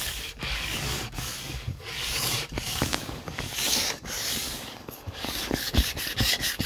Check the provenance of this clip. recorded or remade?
remade